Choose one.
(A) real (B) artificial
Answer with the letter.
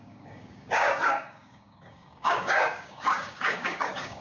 B